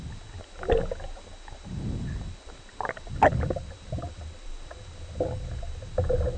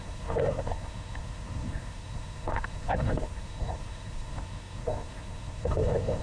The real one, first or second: first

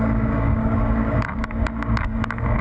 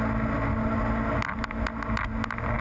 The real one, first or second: second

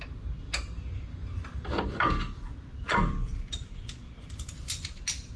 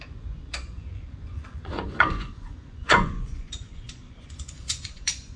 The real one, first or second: first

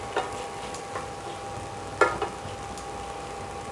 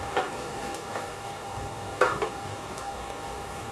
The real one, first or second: first